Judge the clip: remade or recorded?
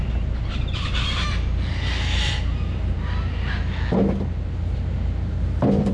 recorded